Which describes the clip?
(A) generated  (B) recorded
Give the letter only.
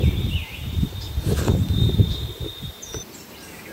A